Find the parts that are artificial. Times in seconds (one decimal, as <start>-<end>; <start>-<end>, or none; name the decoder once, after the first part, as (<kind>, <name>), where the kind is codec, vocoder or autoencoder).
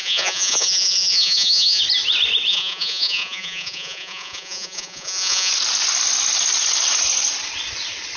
0.0-1.8 (vocoder, Vocos); 2.5-5.5